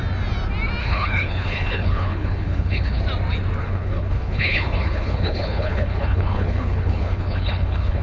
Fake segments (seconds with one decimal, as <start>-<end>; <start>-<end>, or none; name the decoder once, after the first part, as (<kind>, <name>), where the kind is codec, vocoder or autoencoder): 0.8-3.0 (codec, HILCodec); 3.6-8.0

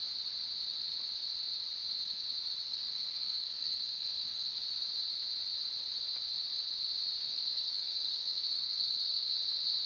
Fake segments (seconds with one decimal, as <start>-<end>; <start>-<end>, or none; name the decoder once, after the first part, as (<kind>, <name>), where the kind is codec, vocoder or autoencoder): 2.7-4.6 (codec, SNAC); 7.2-9.3

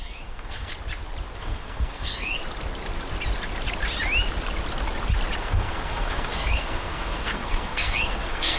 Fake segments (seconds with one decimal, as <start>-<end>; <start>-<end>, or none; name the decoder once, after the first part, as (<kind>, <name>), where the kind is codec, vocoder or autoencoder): 0.0-0.7 (codec, SNAC); 1.4-2.4; 5.4-8.6

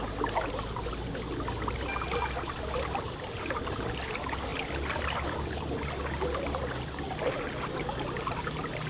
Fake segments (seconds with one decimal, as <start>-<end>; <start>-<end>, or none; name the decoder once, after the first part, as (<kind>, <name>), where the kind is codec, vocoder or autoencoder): none

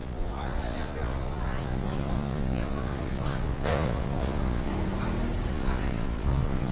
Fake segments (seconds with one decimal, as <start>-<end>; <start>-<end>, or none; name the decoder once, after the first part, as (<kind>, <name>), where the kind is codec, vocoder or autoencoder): 0.0-4.7 (vocoder, Vocos); 5.5-6.7

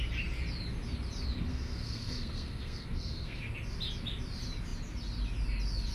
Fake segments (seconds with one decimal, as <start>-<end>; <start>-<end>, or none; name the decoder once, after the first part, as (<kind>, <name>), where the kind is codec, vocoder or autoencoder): 1.5-3.4 (codec, SNAC)